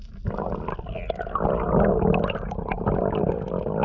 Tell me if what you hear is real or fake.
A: real